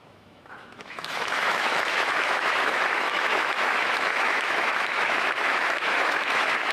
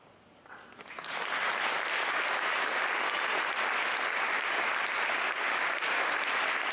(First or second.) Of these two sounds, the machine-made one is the first